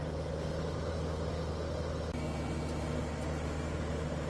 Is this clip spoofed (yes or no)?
no